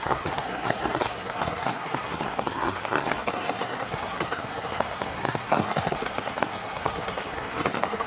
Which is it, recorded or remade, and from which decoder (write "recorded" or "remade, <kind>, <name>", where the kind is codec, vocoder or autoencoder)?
remade, codec, SNAC